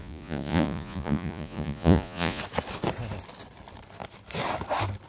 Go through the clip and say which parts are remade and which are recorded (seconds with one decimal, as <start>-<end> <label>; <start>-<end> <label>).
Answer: 0.0-2.4 remade; 2.4-5.1 recorded